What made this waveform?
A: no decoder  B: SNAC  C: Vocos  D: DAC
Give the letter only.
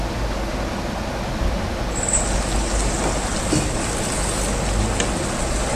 A